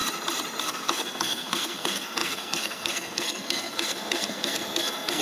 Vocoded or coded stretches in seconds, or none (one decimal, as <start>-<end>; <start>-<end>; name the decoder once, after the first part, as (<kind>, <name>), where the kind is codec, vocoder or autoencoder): 0.6-5.2 (codec, SNAC)